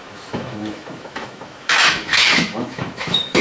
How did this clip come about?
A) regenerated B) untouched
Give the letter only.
A